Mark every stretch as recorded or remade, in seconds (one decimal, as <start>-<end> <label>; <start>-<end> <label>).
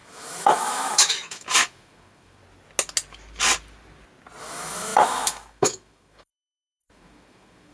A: 0.0-2.4 remade; 2.4-4.4 recorded; 4.4-7.7 remade